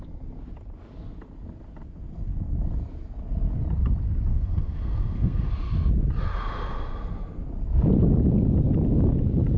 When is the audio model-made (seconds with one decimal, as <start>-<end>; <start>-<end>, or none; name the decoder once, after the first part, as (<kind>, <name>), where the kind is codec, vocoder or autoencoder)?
4.3-5.5 (codec, SNAC)